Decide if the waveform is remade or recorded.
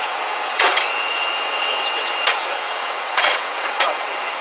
remade